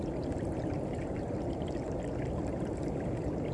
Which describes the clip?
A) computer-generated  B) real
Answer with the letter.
B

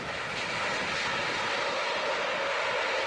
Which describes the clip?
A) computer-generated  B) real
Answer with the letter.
B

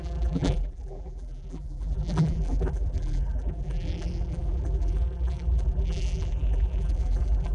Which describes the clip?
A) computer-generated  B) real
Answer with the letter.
A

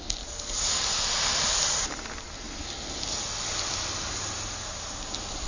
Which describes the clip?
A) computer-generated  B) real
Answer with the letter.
B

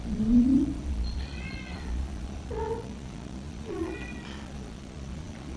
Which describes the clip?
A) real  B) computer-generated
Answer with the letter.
B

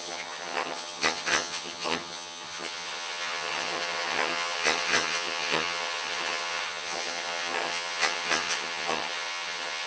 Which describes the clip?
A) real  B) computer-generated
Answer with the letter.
B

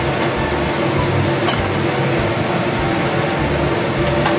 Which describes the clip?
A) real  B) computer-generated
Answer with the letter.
A